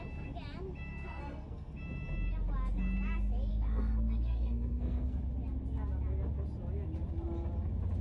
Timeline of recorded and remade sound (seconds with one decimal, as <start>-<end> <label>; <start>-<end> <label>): 0.0-0.9 recorded; 0.9-1.7 remade; 1.7-3.5 recorded; 3.5-5.2 remade; 5.2-8.0 recorded